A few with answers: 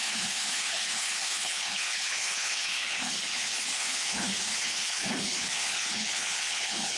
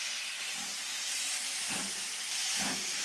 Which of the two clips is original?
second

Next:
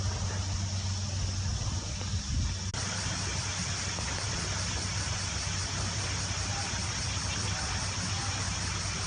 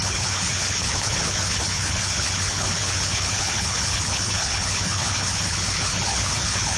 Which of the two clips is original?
first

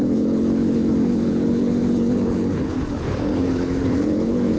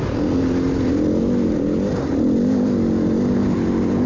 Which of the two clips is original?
second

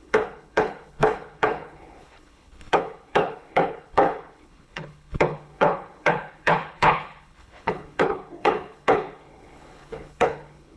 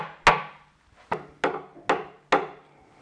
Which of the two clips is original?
second